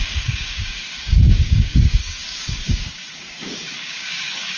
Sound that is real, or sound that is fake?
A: fake